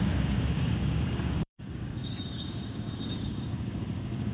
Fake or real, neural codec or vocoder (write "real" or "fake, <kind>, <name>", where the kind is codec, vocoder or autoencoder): fake, codec, DAC